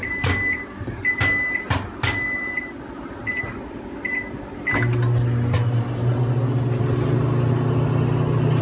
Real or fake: real